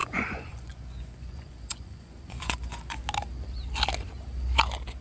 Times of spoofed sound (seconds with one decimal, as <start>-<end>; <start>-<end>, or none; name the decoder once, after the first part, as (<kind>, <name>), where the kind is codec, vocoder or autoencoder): 0.0-3.0 (vocoder, Vocos)